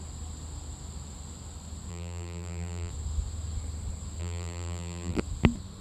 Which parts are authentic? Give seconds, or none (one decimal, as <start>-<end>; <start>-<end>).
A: 0.0-1.9; 2.9-4.2; 5.2-5.8